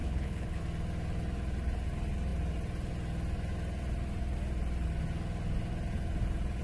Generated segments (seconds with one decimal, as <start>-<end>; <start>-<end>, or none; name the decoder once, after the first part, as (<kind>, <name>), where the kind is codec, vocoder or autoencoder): 0.0-0.6 (codec, HILCodec)